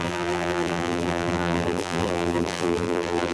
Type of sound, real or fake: fake